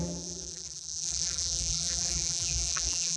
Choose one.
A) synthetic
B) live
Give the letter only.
A